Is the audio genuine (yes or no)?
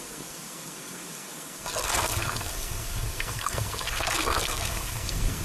no